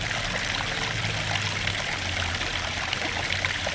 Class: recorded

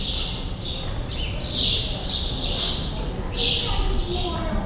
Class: recorded